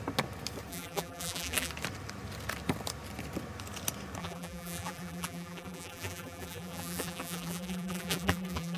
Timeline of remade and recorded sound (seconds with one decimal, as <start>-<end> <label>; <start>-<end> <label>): 0.0-0.7 recorded; 0.7-1.7 remade; 1.7-4.2 recorded; 4.2-8.8 remade

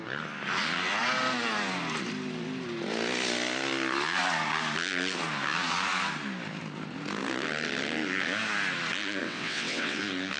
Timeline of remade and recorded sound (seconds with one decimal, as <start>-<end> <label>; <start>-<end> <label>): 0.0-9.2 recorded; 9.2-10.0 remade; 10.0-10.4 recorded